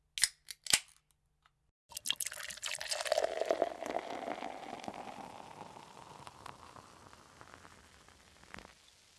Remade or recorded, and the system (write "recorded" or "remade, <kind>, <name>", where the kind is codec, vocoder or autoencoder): recorded